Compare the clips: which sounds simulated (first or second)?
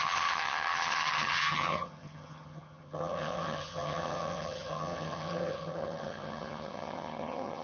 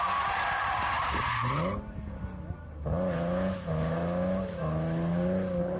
first